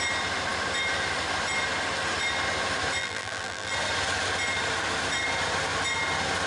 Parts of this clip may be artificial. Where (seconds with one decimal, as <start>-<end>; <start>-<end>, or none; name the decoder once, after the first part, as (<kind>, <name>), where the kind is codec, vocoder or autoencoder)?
3.0-3.7 (vocoder, BigVGAN v2)